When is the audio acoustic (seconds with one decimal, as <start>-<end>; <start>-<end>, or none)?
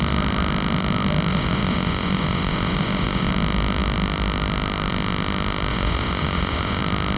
0.0-1.3; 3.3-5.7; 6.8-7.2